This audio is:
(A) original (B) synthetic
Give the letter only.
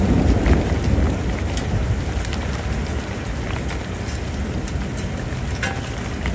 A